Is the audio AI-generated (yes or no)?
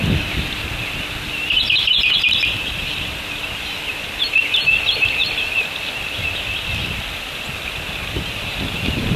yes